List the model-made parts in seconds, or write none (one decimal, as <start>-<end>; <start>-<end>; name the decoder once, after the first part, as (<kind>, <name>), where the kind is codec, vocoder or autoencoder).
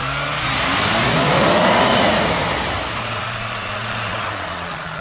3.0-5.0 (vocoder, Vocos)